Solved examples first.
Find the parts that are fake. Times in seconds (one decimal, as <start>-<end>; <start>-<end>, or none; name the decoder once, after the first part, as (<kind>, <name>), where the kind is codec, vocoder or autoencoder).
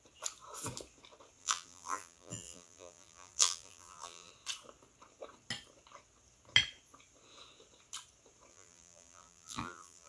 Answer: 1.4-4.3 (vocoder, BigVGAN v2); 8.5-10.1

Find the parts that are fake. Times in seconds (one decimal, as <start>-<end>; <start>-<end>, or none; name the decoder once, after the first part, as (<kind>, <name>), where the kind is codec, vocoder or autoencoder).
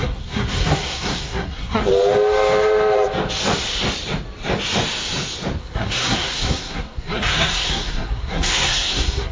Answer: 0.0-1.9 (codec, SNAC); 5.6-9.3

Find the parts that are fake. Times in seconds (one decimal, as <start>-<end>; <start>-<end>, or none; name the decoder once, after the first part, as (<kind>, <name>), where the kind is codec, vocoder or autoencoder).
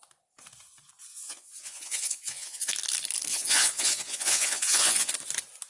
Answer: 1.1-2.7 (vocoder, Vocos); 3.3-5.1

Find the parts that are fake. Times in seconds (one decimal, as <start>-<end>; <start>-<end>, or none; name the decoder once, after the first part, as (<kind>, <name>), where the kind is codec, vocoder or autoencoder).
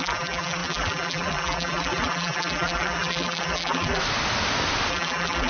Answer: 0.0-4.0 (vocoder, BigVGAN v2); 4.9-5.5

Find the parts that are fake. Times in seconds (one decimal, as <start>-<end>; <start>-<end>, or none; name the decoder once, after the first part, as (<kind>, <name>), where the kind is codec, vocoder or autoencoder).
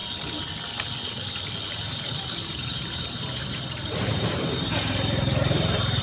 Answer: 1.7-6.0 (vocoder, BigVGAN v2)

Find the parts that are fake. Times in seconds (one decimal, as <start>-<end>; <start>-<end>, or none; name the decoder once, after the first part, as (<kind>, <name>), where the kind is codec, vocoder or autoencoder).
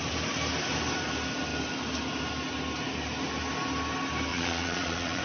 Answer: 4.3-5.2 (vocoder, Vocos)